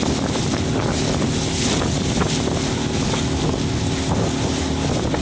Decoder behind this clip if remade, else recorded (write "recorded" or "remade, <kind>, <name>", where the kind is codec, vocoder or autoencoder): recorded